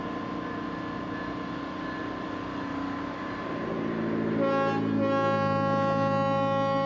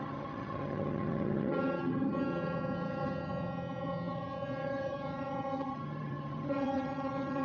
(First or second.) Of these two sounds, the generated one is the second